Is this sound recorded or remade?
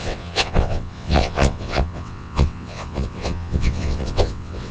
remade